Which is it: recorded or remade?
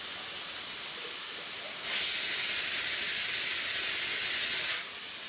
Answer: recorded